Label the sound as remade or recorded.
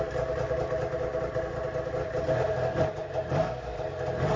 recorded